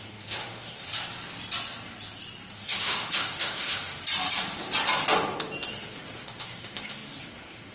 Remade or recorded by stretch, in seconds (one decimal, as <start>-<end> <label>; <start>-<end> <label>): 0.0-0.9 remade; 0.9-2.5 recorded; 2.5-4.0 remade; 4.0-5.7 recorded; 5.7-7.7 remade